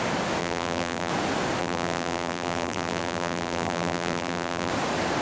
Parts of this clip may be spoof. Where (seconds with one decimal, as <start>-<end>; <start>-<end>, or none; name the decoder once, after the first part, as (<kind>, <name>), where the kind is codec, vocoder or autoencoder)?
0.4-1.1 (vocoder, BigVGAN v2); 1.6-4.7